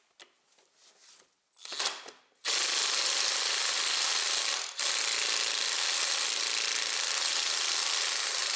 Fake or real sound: real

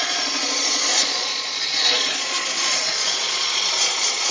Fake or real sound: fake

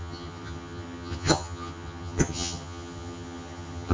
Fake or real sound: fake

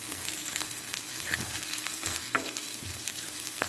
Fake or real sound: fake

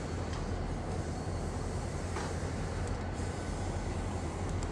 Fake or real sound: real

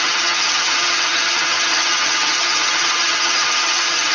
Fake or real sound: fake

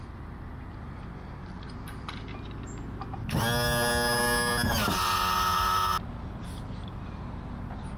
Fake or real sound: real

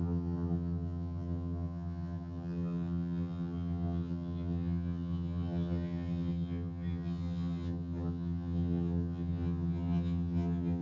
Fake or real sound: fake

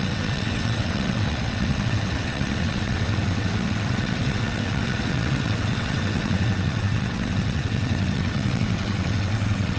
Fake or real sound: fake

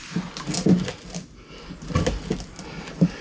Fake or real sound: real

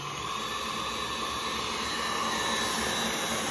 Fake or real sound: real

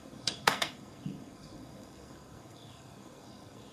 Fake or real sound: fake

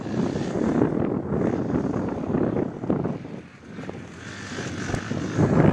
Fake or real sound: real